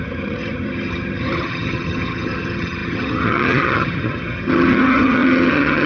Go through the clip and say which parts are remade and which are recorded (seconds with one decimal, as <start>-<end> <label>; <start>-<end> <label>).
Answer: 0.0-5.9 remade